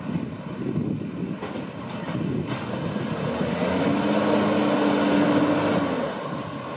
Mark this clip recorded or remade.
recorded